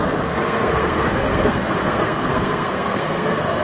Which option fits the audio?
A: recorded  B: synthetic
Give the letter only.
B